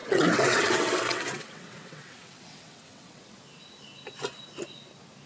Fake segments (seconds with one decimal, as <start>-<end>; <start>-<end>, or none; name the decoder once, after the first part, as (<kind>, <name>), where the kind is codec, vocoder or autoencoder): 0.0-3.2 (vocoder, WaveNeXt)